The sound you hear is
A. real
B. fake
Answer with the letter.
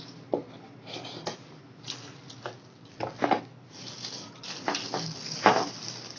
A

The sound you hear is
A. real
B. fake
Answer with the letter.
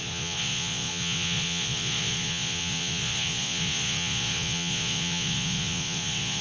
B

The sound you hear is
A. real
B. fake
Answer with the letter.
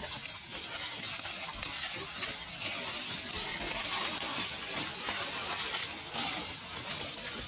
A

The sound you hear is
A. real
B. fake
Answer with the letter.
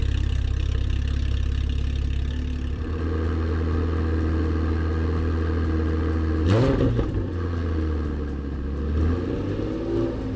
A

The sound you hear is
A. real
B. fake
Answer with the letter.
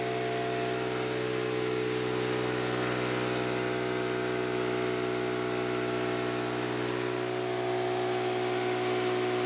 A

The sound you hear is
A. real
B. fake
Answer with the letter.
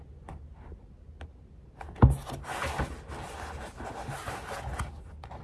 A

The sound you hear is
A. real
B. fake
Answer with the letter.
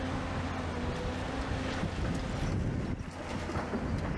A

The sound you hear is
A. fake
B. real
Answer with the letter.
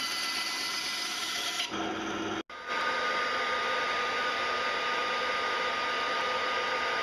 B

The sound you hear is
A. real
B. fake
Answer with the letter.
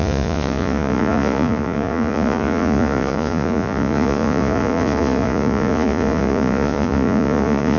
B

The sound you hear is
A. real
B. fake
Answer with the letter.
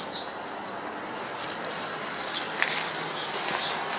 A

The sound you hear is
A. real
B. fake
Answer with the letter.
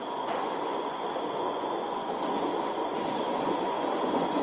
B